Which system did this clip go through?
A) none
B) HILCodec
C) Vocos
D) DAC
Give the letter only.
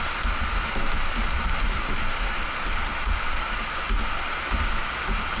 A